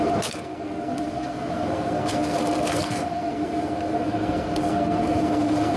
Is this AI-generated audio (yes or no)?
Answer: yes